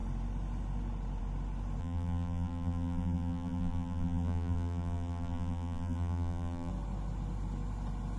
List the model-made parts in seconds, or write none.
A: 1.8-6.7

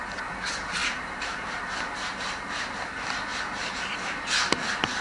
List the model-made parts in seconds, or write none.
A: 0.8-2.6; 3.3-4.3